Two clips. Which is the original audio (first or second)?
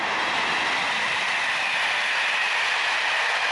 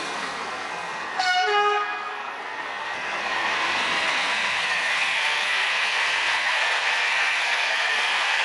first